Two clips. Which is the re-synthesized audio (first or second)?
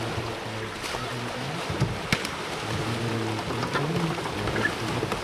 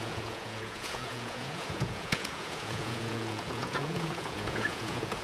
second